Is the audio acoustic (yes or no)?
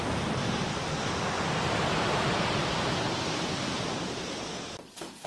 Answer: yes